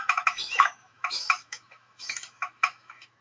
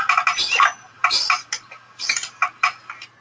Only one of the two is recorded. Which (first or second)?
second